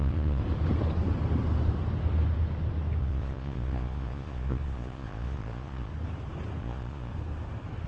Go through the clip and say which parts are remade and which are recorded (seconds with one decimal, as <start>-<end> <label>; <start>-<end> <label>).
0.0-0.4 remade; 0.4-3.0 recorded; 3.0-5.9 remade; 5.9-6.6 recorded; 6.6-7.1 remade; 7.1-7.9 recorded